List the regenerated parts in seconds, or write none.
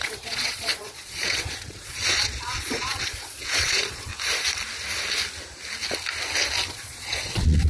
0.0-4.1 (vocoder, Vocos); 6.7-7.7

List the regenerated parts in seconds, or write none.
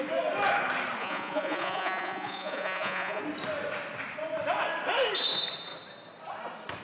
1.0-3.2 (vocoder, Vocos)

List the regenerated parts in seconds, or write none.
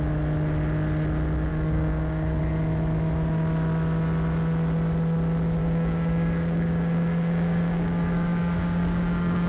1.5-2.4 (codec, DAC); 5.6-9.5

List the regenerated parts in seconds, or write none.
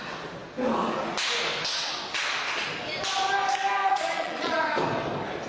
3.8-4.6 (vocoder, Vocos)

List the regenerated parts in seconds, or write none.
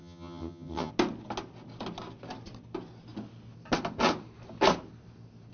0.0-0.9 (vocoder, HiFi-GAN)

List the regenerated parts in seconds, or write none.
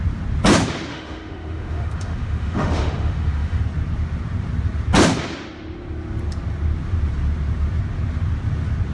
0.9-3.6 (autoencoder, DAC-VAE)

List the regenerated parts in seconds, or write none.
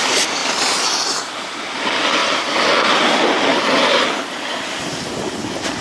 none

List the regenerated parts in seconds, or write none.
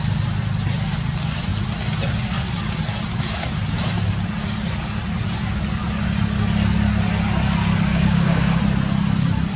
7.9-8.6 (codec, DAC)